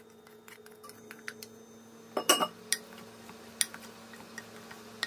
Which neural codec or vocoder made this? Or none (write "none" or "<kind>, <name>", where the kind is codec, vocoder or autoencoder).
none